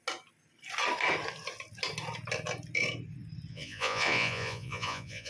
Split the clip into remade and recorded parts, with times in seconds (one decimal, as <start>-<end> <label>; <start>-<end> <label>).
0.0-3.5 recorded; 3.5-5.3 remade

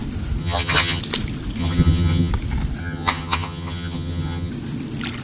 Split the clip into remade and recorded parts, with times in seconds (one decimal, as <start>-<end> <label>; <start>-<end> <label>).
0.0-0.4 recorded; 0.4-1.0 remade; 1.0-1.6 recorded; 1.6-2.3 remade; 2.3-2.8 recorded; 2.8-4.5 remade; 4.5-5.2 recorded

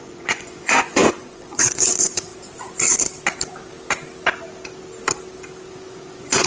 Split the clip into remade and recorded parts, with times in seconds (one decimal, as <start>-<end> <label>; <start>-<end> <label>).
0.0-2.3 remade; 2.3-5.7 recorded; 5.7-6.5 remade

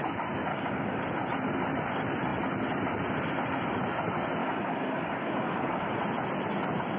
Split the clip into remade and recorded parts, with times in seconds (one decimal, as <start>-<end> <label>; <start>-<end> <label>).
0.0-0.5 recorded; 0.5-1.0 remade; 1.0-4.4 recorded; 4.4-6.0 remade; 6.0-7.0 recorded

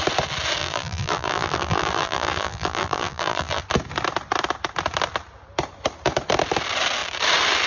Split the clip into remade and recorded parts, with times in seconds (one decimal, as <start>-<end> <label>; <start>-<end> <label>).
0.0-0.6 recorded; 0.6-3.6 remade; 3.6-7.7 recorded

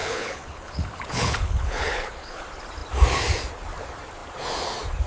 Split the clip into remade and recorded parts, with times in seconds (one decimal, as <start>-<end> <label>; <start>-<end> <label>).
0.0-2.4 remade; 2.4-5.1 recorded

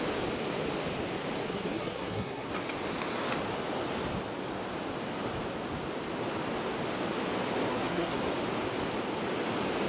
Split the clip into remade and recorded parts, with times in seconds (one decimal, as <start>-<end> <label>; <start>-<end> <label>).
0.0-1.5 recorded; 1.5-2.5 remade; 2.5-7.7 recorded; 7.7-8.2 remade; 8.2-9.9 recorded

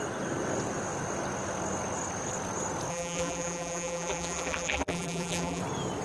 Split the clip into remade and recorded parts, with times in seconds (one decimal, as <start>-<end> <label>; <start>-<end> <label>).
0.0-2.9 recorded; 2.9-5.6 remade; 5.6-6.0 recorded